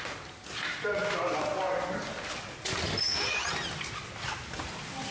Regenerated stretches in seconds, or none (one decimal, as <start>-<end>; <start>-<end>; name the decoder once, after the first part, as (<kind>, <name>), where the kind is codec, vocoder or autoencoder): none